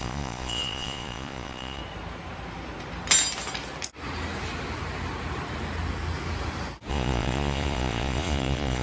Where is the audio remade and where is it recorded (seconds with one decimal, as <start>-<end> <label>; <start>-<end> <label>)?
0.0-1.8 remade; 1.8-6.9 recorded; 6.9-8.8 remade